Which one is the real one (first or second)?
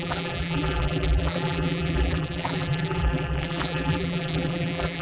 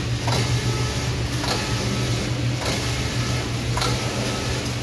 second